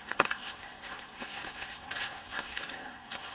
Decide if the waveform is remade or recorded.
remade